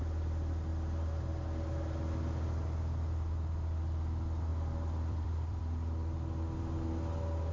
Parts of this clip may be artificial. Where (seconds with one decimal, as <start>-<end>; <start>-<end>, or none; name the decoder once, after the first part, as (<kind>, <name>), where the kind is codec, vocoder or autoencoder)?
4.5-5.6 (vocoder, BigVGAN v2)